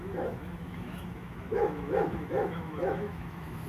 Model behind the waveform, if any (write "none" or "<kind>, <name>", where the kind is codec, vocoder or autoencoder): autoencoder, DAC-VAE